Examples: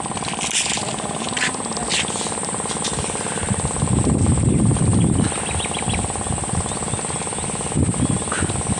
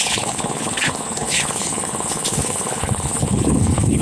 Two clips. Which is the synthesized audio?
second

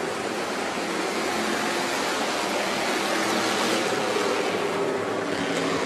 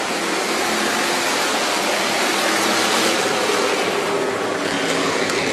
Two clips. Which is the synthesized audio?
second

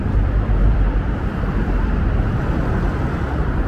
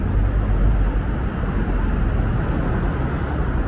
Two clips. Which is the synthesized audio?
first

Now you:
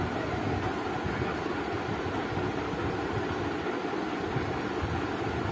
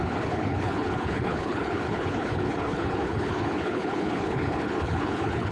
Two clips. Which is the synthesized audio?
second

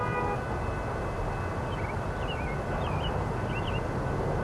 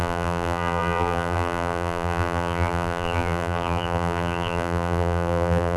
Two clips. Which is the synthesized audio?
second